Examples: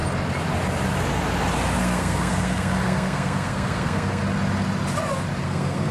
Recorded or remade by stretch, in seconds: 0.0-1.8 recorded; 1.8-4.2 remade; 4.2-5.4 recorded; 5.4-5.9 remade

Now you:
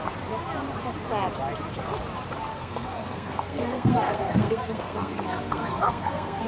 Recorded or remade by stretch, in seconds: 0.0-2.5 recorded; 2.5-6.5 remade